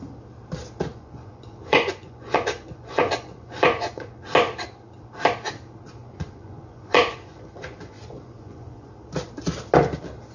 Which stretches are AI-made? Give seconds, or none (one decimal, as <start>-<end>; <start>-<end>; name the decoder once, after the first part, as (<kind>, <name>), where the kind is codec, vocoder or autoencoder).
0.9-4.2 (vocoder, Vocos); 6.0-8.9